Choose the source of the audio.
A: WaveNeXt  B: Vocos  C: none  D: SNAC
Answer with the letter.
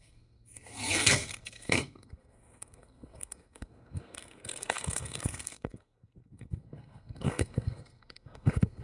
D